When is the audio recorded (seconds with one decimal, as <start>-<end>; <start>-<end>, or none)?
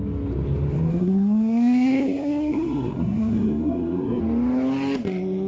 0.0-0.9; 4.2-5.5